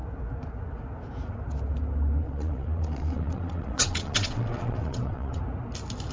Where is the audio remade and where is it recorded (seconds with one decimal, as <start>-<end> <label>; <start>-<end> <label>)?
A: 0.0-2.2 recorded; 2.2-5.4 remade; 5.4-6.1 recorded